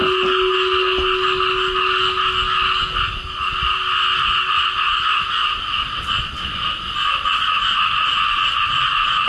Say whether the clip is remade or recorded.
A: recorded